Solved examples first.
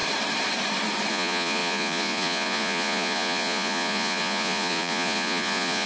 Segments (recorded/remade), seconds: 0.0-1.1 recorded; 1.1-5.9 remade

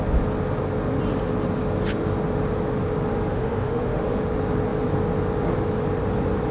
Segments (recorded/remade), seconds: 0.0-3.3 recorded; 3.3-4.2 remade; 4.2-6.5 recorded

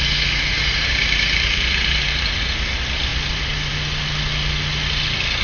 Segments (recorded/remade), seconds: 0.0-0.5 recorded; 0.5-2.4 remade; 2.4-5.4 recorded

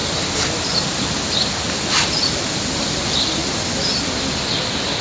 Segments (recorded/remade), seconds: 0.0-5.0 recorded

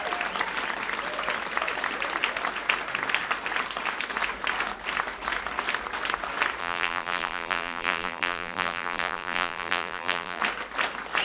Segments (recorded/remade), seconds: 0.0-6.6 recorded; 6.6-10.4 remade; 10.4-11.2 recorded

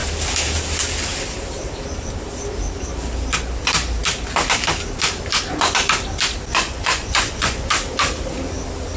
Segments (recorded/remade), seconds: 0.0-6.5 recorded; 6.5-7.7 remade; 7.7-9.0 recorded

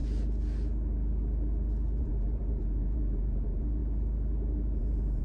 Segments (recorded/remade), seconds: 0.0-2.0 recorded; 2.0-3.8 remade; 3.8-4.8 recorded; 4.8-5.2 remade